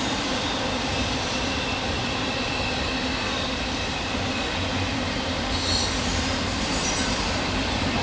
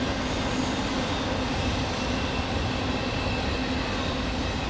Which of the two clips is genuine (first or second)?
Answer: second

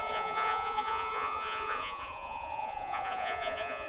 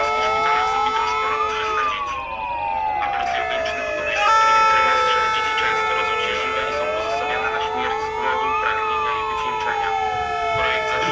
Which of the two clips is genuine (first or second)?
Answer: second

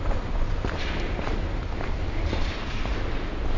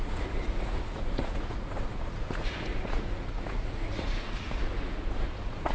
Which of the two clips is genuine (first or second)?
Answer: first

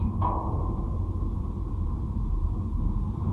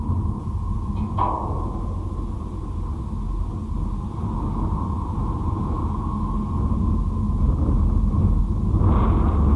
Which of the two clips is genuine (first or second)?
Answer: second